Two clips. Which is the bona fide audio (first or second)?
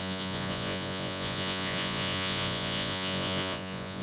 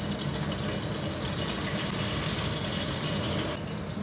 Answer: second